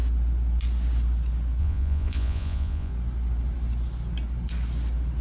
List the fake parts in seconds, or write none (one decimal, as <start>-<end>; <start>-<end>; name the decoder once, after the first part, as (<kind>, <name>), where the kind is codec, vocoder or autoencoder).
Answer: 1.6-2.9 (vocoder, Vocos)